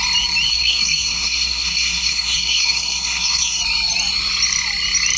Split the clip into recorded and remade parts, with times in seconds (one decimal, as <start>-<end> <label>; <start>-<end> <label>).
0.0-0.5 recorded; 0.5-3.6 remade; 3.6-5.2 recorded